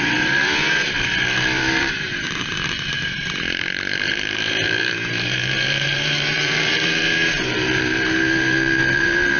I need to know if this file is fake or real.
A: fake